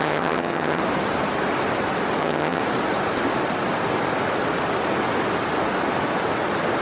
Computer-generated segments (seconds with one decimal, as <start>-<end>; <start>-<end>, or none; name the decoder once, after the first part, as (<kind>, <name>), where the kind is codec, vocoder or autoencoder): 0.0-0.8 (vocoder, HiFi-GAN); 2.2-2.6